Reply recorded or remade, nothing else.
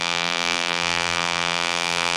remade